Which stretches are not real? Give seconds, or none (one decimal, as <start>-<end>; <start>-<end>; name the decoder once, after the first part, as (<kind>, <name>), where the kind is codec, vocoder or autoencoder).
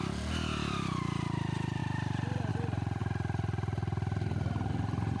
none